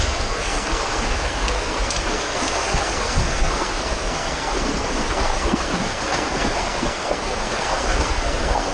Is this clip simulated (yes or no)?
yes